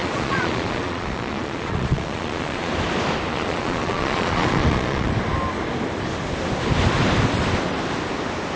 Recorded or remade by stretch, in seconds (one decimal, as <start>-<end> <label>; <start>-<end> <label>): 0.0-2.7 remade; 2.7-3.3 recorded; 3.3-5.1 remade; 5.1-8.6 recorded